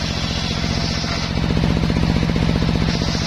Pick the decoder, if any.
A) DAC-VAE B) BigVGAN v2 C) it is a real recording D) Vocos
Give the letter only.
C